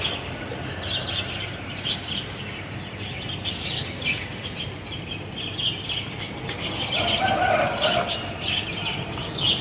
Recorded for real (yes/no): yes